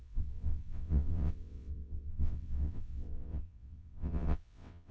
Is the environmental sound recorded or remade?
remade